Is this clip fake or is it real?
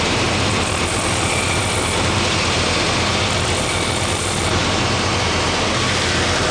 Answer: real